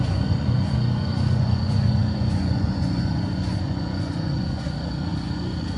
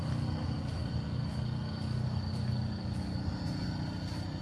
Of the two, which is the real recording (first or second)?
second